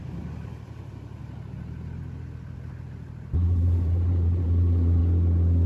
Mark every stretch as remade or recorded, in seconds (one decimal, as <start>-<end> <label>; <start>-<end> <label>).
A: 0.0-1.2 remade; 1.2-3.3 recorded; 3.3-5.0 remade; 5.0-5.7 recorded